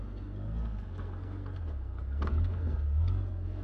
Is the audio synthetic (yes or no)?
yes